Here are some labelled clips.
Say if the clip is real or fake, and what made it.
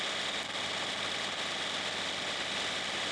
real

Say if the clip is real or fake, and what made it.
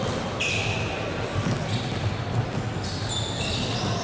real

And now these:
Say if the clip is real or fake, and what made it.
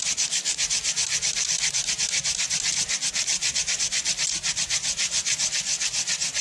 real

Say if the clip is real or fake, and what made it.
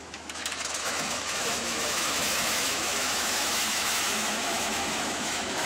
fake, autoencoder, DAC-VAE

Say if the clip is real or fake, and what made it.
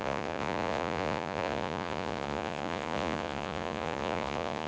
fake, vocoder, Vocos